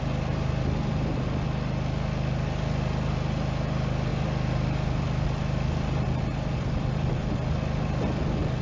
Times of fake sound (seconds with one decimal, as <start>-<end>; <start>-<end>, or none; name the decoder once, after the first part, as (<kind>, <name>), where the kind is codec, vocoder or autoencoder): none